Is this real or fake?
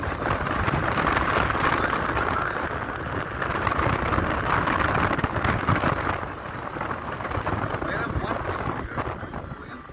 real